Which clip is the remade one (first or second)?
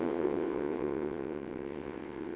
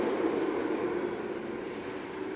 first